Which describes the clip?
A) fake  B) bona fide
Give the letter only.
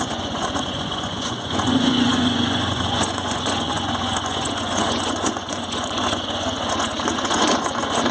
A